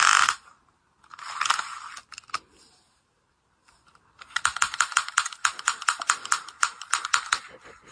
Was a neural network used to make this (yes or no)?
no